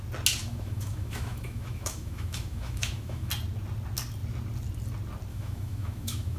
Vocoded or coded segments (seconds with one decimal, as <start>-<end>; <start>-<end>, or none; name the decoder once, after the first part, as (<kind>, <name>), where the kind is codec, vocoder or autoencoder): 0.4-3.3 (autoencoder, DAC-VAE); 5.3-6.4